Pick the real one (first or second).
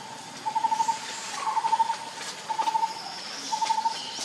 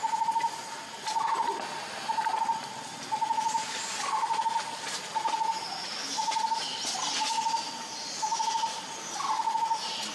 second